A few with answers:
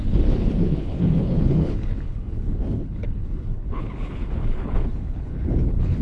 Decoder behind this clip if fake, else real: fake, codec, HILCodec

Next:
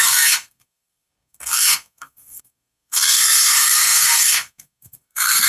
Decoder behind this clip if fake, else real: fake, codec, SNAC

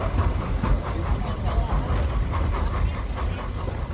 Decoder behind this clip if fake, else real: real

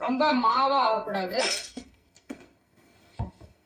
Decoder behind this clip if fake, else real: fake, codec, SNAC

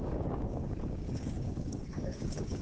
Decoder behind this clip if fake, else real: fake, codec, DAC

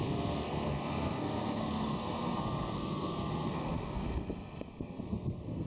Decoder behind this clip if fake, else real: fake, codec, SNAC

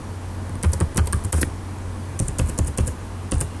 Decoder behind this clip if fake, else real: real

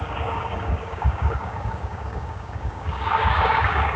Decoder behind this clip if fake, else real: fake, codec, DAC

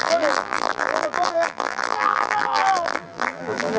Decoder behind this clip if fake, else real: fake, vocoder, BigVGAN v2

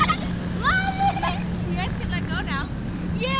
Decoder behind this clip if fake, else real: real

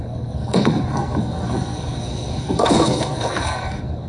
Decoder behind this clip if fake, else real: fake, codec, SNAC